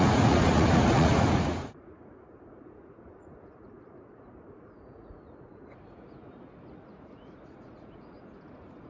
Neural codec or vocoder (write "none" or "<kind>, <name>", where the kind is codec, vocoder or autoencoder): vocoder, Vocos